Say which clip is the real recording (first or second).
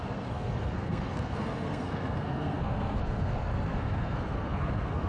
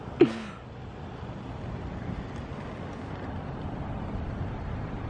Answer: second